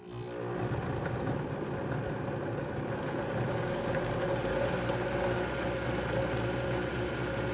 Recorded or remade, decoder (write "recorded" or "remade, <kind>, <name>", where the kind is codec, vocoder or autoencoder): recorded